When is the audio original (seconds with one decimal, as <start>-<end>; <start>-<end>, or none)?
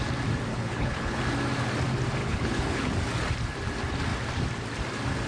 0.0-0.5; 1.2-2.2; 2.9-5.3